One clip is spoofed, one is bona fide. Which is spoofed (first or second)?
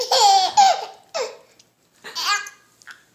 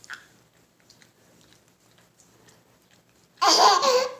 second